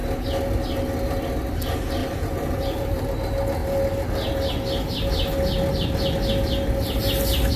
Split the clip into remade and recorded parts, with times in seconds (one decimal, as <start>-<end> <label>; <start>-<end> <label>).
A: 0.0-2.0 recorded; 2.0-3.0 remade; 3.0-7.6 recorded